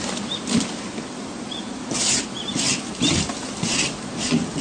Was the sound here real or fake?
real